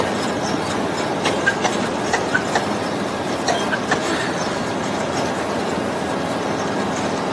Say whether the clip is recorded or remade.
recorded